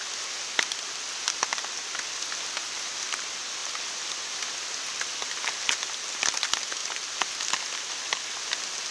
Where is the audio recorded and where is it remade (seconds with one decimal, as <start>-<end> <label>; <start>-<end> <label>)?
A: 0.0-8.9 recorded